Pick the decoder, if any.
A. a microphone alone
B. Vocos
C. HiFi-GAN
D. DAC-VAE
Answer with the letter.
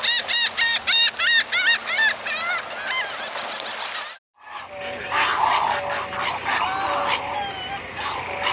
A